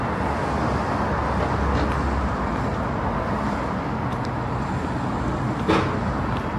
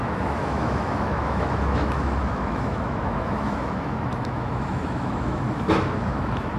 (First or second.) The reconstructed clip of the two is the second